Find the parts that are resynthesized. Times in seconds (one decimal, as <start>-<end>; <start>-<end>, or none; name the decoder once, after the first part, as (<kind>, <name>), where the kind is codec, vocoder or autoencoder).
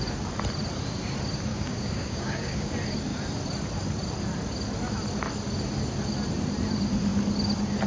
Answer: 1.5-2.7 (codec, DAC)